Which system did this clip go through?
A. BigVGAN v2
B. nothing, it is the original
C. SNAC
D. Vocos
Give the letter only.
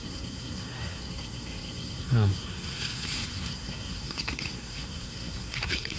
C